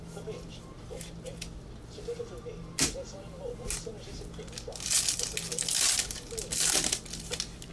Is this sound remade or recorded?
recorded